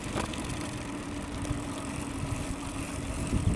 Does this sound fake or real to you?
real